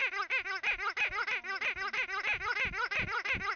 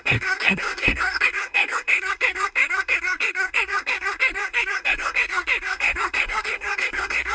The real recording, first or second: first